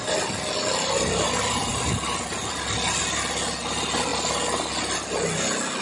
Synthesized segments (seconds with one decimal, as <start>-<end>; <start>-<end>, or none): none